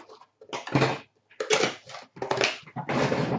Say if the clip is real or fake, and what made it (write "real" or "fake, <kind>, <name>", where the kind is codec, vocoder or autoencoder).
real